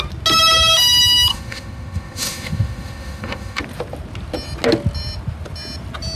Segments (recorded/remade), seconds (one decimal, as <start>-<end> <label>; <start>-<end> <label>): 0.0-1.3 recorded; 1.3-3.6 remade; 3.6-6.2 recorded